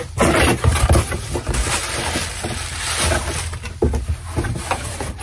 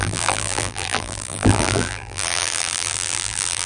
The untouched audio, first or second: first